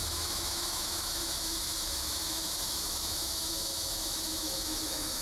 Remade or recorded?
remade